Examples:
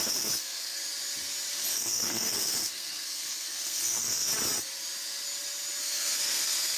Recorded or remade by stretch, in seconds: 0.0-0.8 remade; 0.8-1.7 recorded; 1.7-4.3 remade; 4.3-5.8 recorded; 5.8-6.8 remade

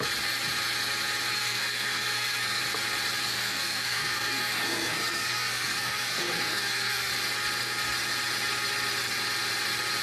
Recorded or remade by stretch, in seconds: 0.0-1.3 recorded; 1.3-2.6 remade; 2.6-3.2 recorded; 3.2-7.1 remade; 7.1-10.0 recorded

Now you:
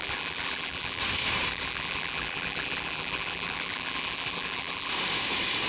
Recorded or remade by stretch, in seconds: 0.0-1.0 remade; 1.0-1.5 recorded; 1.5-4.9 remade; 4.9-5.7 recorded